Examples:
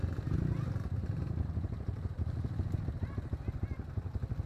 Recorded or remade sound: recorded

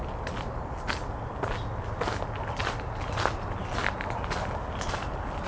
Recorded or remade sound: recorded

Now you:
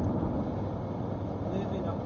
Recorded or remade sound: recorded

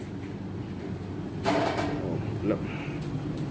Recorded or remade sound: recorded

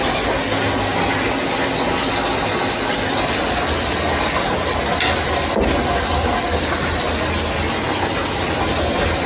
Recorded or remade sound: recorded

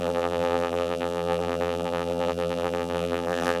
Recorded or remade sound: remade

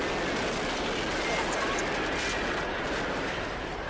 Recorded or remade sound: recorded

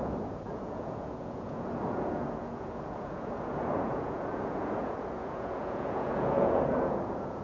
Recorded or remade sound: remade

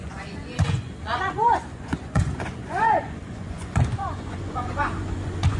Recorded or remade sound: remade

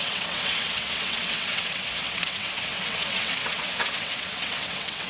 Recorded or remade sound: remade